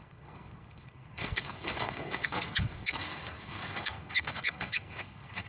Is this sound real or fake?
fake